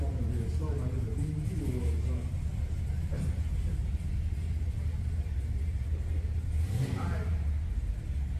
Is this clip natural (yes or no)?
yes